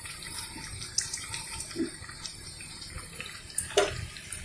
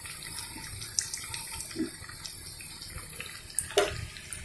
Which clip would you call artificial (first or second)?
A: first